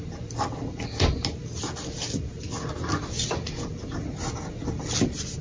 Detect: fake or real real